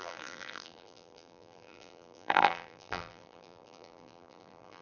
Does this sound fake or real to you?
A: fake